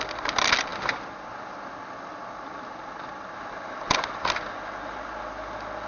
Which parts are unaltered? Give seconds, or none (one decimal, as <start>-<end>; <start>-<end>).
0.0-5.9